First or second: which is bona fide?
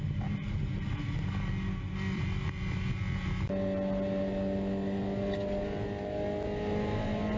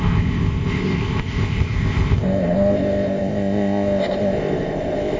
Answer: first